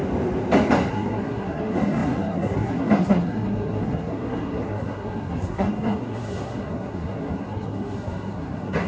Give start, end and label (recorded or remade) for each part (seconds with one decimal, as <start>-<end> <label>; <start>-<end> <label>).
0.0-0.9 recorded; 0.9-8.9 remade